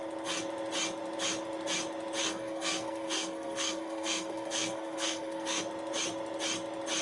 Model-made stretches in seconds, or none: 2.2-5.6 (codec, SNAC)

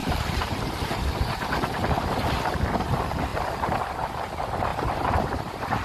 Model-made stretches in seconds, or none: 0.0-1.1 (vocoder, BigVGAN v2); 4.7-5.2

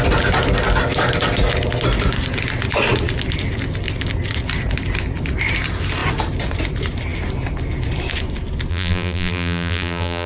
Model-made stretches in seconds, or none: 8.7-10.3 (vocoder, BigVGAN v2)

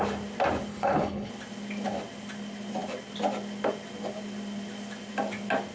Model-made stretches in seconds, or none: 0.7-1.3 (codec, HILCodec)

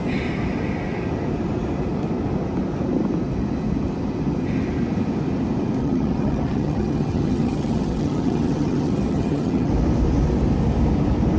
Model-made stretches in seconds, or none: 5.8-9.7 (vocoder, HiFi-GAN)

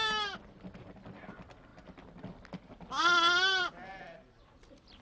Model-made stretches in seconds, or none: none

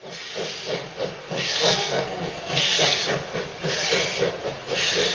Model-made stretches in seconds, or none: 1.2-3.1 (codec, SNAC)

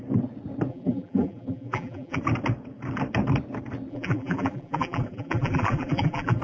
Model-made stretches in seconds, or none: 0.7-2.2 (vocoder, BigVGAN v2); 3.9-6.4